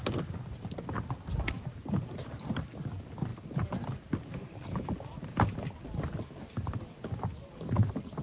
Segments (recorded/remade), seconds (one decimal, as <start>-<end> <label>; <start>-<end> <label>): 0.0-0.6 remade; 0.6-3.3 recorded; 3.3-7.4 remade; 7.4-8.2 recorded